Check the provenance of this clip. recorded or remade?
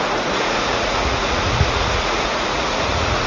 remade